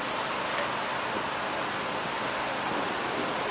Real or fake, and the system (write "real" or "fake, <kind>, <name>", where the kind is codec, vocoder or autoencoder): real